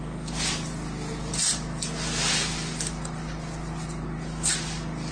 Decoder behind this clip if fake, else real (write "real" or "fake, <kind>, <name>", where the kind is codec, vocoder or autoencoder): real